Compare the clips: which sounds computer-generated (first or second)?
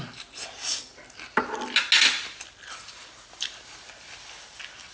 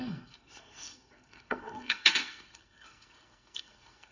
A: second